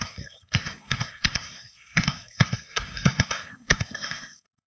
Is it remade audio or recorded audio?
remade